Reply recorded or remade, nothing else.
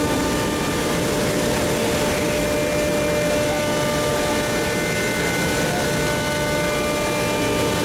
recorded